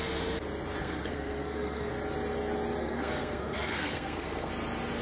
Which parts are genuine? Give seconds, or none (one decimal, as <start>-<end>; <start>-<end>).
0.0-0.8; 1.9-2.8; 4.5-5.0

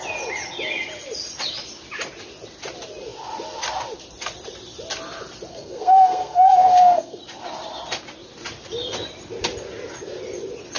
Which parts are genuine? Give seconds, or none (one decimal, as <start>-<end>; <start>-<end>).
0.0-5.5; 7.2-10.8

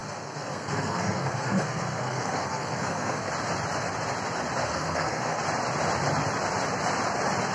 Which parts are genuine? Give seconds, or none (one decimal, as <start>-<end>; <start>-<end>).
3.3-4.6; 5.4-7.5

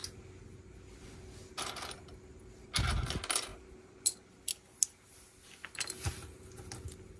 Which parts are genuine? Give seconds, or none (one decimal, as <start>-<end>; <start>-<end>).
0.0-7.2

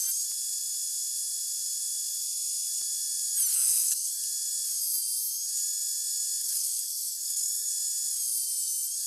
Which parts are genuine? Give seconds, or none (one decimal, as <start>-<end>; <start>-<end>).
0.0-3.5; 4.2-6.4; 7.7-9.1

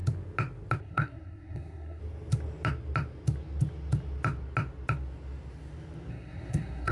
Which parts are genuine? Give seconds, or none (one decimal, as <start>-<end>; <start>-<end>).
0.0-0.8; 2.0-6.1